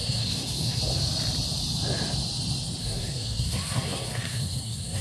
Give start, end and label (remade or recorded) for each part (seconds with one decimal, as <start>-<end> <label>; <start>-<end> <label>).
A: 0.0-0.8 remade; 0.8-2.8 recorded; 2.8-5.0 remade